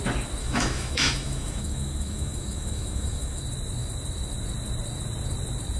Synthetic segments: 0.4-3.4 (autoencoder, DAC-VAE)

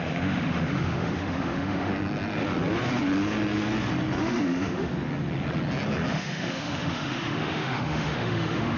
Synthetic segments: 0.0-1.9 (autoencoder, DAC-VAE); 4.2-4.9; 6.1-8.8